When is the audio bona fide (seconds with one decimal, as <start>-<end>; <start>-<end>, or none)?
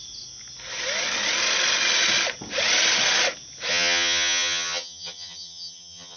0.0-3.7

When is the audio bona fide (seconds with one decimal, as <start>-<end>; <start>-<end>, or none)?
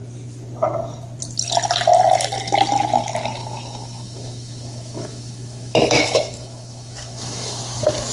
0.0-3.4; 7.6-8.1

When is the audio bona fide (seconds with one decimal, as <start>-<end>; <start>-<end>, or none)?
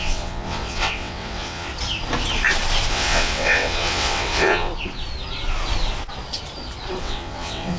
1.7-2.9; 4.7-7.0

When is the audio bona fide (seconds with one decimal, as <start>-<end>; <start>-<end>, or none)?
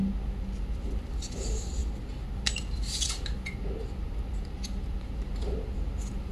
0.0-6.3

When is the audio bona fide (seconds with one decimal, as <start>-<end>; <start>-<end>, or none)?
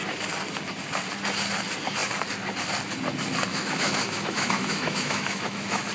0.0-3.5